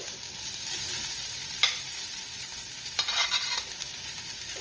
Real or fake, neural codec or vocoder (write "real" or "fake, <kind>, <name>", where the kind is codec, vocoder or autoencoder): fake, vocoder, BigVGAN v2